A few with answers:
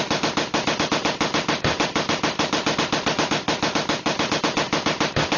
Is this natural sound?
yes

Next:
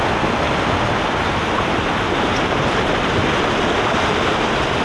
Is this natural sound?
yes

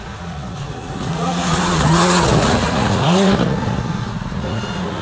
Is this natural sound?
no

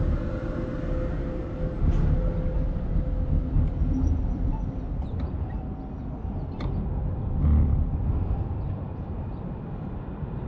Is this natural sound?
yes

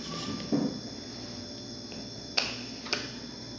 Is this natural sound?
yes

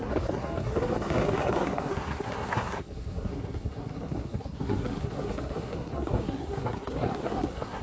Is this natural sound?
no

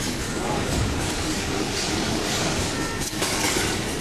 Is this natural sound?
no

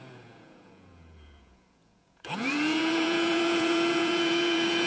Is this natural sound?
no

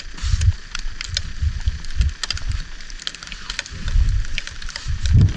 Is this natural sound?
yes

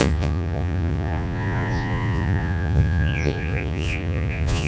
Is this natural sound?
no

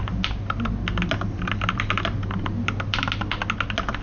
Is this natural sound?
yes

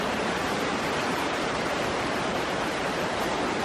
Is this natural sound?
no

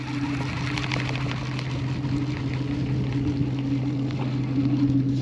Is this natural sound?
yes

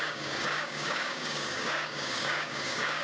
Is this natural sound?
no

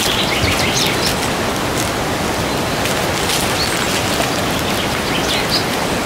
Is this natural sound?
yes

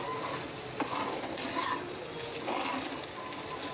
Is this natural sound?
yes